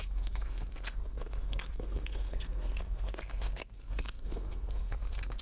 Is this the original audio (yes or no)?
no